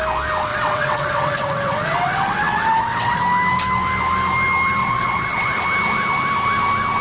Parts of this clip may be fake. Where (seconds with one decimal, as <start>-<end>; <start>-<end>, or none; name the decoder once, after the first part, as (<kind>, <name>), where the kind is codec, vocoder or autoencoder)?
0.5-3.2 (vocoder, WaveNeXt); 4.8-5.6